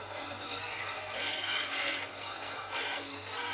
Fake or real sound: fake